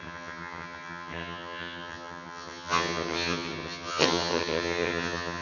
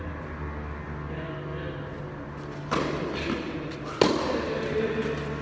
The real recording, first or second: second